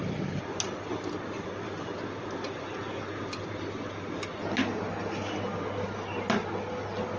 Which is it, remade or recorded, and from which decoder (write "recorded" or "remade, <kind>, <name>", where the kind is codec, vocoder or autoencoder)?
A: recorded